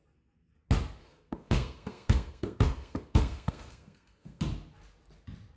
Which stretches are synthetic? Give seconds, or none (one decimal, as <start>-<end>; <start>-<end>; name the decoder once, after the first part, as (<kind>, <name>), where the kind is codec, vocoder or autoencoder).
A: 1.0-4.4 (codec, SNAC)